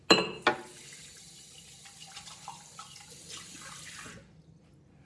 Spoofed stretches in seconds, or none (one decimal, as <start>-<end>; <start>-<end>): none